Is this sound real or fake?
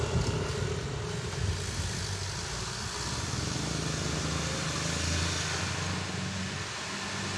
real